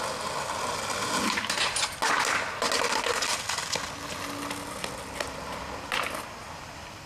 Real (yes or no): yes